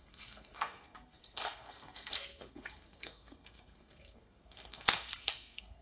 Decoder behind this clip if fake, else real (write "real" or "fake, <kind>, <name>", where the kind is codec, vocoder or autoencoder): fake, codec, SNAC